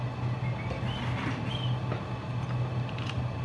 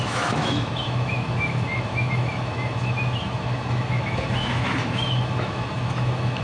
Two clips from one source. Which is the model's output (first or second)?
second